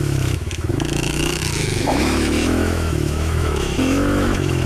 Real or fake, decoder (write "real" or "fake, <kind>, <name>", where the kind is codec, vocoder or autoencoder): fake, autoencoder, DAC-VAE